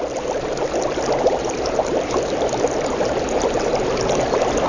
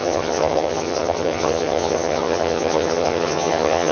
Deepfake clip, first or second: second